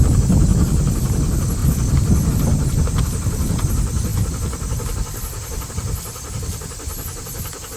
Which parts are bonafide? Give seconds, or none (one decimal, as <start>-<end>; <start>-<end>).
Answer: 0.0-7.8